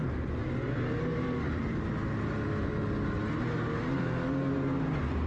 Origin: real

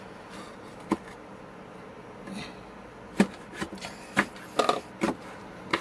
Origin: real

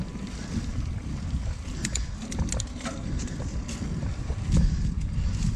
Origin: real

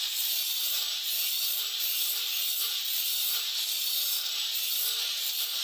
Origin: fake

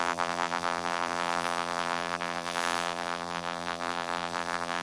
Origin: fake